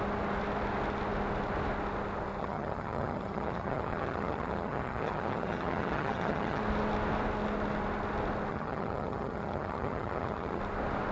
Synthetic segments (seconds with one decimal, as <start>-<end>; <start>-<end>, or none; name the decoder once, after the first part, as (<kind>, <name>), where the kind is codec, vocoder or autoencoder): 2.4-6.6 (vocoder, HiFi-GAN); 8.5-10.6